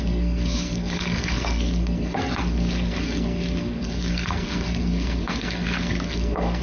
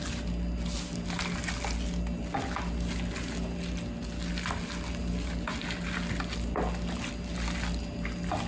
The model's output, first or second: first